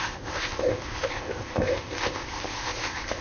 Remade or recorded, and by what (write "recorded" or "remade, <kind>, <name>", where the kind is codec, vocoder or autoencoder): remade, codec, ZipCodec